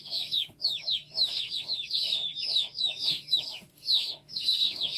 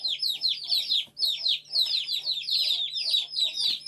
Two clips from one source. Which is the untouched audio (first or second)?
second